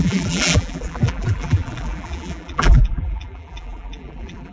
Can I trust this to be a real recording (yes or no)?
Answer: no